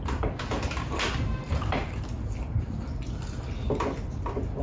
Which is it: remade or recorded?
recorded